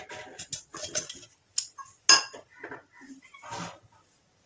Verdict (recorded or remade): recorded